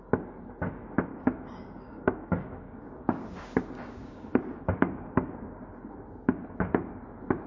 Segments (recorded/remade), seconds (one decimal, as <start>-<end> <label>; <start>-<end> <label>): 0.0-1.1 recorded; 1.1-5.6 remade; 5.6-7.5 recorded